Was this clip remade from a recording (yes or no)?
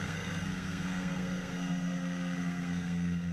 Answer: yes